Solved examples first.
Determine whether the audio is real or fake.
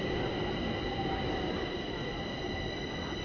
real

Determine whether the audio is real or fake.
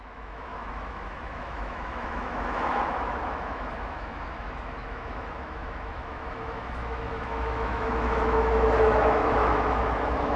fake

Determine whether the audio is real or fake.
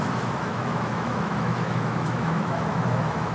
fake